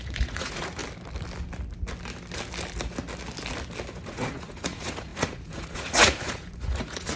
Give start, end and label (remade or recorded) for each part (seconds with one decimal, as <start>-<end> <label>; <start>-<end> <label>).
0.0-0.8 remade; 0.8-3.9 recorded; 3.9-7.2 remade